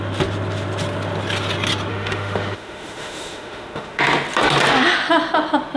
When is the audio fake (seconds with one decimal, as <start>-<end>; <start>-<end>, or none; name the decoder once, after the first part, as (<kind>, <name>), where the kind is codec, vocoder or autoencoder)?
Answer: 1.9-4.0 (autoencoder, DAC-VAE)